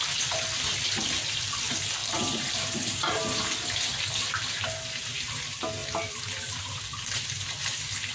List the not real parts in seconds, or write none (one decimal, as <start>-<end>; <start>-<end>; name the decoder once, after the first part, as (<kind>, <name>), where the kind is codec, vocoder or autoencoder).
2.0-3.4 (vocoder, BigVGAN v2); 5.8-6.8